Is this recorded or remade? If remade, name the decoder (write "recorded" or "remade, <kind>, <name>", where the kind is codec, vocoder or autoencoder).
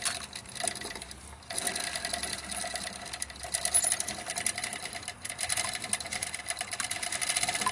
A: recorded